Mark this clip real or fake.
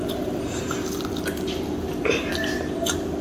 real